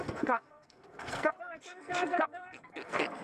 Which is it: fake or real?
fake